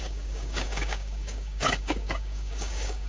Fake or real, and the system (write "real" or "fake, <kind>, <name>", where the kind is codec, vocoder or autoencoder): fake, codec, DAC